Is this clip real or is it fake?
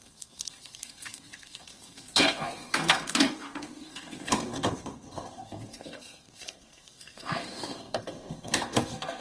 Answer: fake